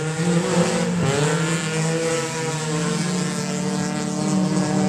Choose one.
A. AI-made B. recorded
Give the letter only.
B